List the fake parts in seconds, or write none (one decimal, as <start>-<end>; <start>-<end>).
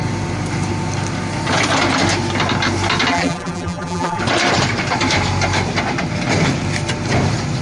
3.1-4.2